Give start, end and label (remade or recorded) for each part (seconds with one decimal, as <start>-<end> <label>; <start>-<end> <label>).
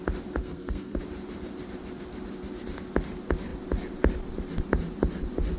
0.0-0.4 recorded; 0.4-1.0 remade; 1.0-5.6 recorded